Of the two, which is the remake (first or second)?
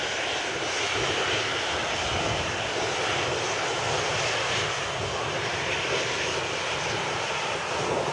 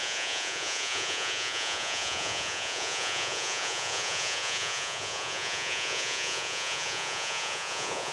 second